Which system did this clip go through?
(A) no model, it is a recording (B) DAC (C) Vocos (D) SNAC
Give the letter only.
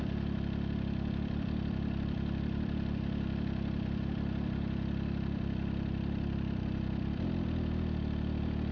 A